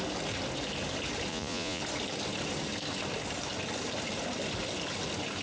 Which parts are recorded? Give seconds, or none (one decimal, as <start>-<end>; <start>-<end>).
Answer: 0.0-1.3; 1.8-5.4